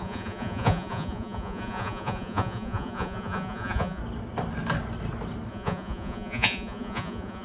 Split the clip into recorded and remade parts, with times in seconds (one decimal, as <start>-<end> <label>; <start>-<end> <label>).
0.0-4.0 remade; 4.0-5.5 recorded; 5.5-7.4 remade